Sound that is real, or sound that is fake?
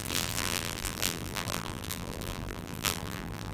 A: fake